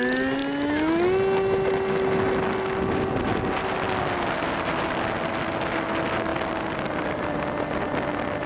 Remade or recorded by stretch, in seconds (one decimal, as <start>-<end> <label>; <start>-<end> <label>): 0.0-8.5 recorded